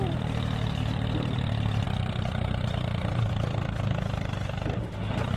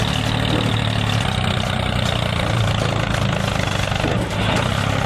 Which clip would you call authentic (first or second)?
second